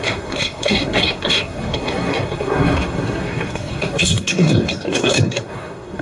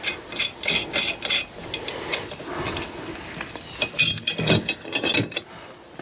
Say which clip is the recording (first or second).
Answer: second